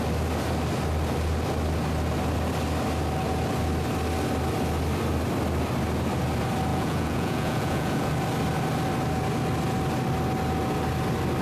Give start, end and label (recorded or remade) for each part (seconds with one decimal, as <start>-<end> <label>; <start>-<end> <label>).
0.0-6.7 recorded; 6.7-8.1 remade; 8.1-11.4 recorded